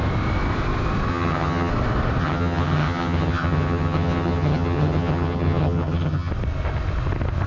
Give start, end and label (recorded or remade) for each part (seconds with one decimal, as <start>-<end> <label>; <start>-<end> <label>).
0.0-1.1 recorded; 1.1-1.7 remade; 1.7-2.2 recorded; 2.2-6.3 remade; 6.3-7.5 recorded